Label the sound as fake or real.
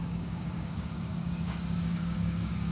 fake